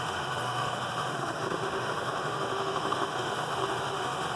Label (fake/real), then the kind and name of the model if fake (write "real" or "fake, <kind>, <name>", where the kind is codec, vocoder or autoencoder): fake, autoencoder, DAC-VAE